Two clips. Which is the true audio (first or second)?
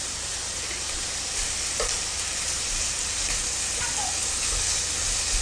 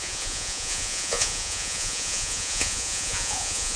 first